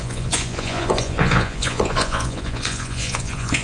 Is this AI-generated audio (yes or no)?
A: yes